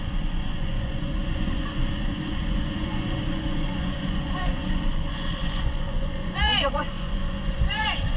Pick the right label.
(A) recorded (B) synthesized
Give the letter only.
B